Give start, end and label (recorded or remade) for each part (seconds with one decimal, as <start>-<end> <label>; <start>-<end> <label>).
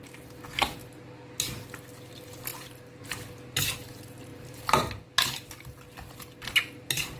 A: 0.0-2.5 recorded; 2.5-3.0 remade; 3.0-4.3 recorded; 4.3-5.8 remade; 5.8-7.2 recorded